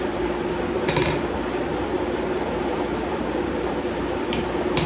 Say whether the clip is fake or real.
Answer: real